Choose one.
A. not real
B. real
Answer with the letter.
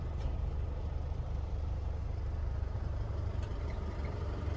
A